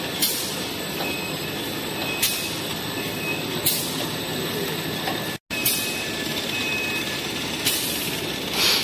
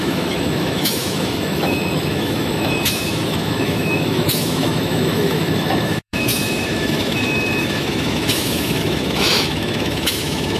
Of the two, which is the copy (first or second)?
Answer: second